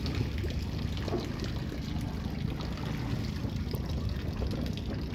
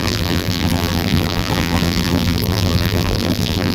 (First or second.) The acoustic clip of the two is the first